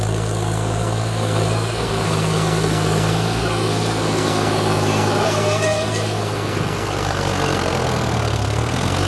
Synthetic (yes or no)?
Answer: yes